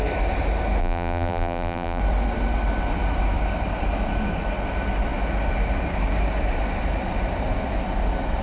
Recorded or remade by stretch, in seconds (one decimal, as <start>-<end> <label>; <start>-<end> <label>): 0.0-0.8 recorded; 0.8-2.0 remade; 2.0-8.4 recorded